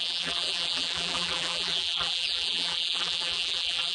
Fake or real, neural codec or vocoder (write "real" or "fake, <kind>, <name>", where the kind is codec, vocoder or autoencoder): fake, vocoder, BigVGAN v2